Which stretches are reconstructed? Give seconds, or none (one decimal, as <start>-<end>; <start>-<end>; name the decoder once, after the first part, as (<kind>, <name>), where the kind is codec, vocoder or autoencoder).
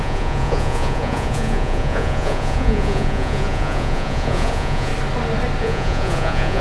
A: 0.0-4.9 (vocoder, Vocos); 5.6-6.6